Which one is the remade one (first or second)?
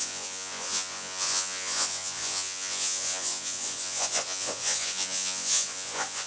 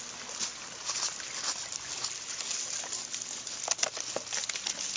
first